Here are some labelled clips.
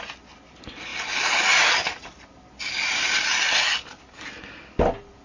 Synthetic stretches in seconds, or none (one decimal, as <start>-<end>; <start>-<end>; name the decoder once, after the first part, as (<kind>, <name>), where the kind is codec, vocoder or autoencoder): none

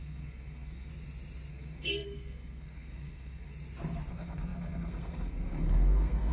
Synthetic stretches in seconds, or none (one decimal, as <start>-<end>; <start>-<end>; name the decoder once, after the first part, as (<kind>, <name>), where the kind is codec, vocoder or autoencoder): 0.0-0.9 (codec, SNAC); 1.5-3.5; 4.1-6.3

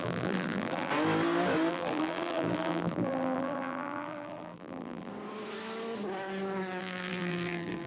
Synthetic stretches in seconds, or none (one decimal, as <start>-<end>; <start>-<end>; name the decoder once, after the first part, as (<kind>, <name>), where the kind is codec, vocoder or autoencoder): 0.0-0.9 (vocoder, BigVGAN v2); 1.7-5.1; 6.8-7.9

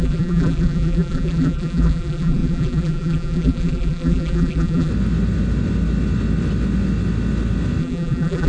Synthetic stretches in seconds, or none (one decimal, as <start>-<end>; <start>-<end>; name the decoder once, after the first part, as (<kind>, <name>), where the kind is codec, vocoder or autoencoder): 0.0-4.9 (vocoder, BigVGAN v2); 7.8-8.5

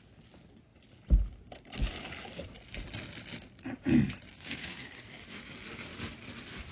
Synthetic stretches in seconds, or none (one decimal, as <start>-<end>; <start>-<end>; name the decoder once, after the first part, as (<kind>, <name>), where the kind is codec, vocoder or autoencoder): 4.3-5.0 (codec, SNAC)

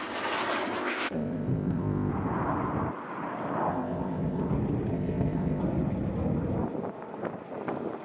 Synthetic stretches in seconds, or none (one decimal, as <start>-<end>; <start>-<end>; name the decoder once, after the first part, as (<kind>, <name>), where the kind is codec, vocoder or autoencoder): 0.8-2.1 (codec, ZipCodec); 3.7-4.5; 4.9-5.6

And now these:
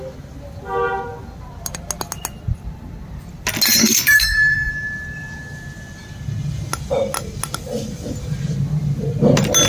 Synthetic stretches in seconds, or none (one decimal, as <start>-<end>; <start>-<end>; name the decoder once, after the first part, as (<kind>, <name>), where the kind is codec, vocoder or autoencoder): 3.8-4.7 (codec, SNAC)